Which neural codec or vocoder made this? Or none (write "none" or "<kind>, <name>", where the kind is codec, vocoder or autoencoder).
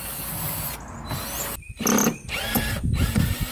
none